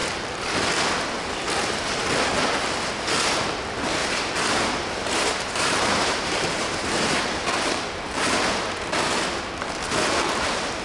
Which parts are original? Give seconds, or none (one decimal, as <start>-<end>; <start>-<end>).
0.0-4.0; 8.4-10.8